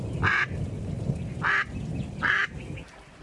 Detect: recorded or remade recorded